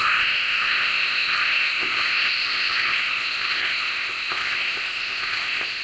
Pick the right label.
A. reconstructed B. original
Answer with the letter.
A